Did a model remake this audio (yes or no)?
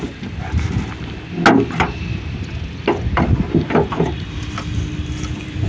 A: no